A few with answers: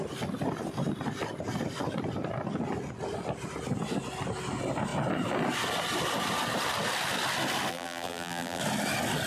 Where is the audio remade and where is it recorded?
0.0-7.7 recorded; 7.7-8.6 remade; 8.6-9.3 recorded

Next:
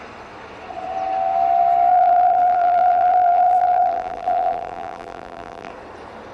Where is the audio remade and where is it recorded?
0.0-1.9 recorded; 1.9-5.7 remade; 5.7-6.3 recorded

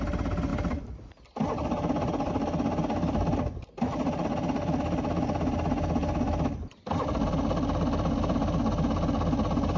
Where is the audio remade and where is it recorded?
0.0-0.5 recorded; 0.5-2.3 remade; 2.3-6.0 recorded; 6.0-7.3 remade; 7.3-9.8 recorded

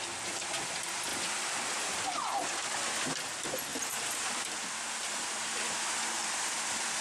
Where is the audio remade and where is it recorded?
0.0-7.0 recorded

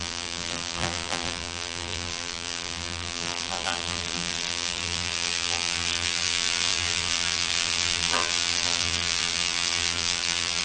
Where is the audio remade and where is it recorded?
0.0-10.6 remade

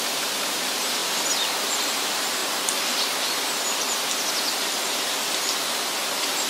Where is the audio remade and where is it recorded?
0.0-2.4 remade; 2.4-6.5 recorded